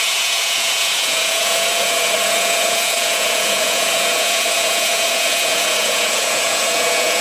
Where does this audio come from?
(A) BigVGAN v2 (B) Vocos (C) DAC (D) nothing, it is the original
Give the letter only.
B